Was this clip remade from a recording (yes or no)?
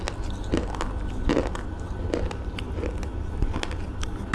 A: no